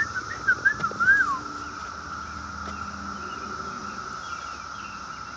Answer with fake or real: real